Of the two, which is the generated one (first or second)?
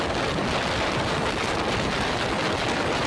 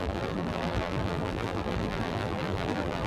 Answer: second